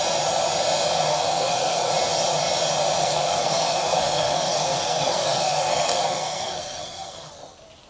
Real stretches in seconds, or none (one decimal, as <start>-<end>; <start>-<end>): 0.0-1.1; 1.9-3.0; 7.3-7.9